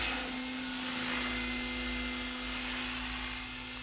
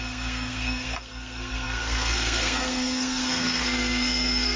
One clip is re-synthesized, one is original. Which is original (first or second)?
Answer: first